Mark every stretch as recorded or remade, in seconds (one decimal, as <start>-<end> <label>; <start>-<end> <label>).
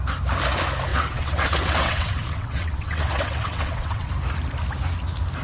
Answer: 0.0-0.9 recorded; 0.9-4.1 remade; 4.1-5.4 recorded